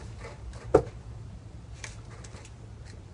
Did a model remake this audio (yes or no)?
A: yes